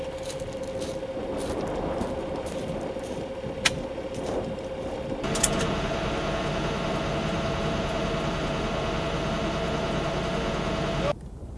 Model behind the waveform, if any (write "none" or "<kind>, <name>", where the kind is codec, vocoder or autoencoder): none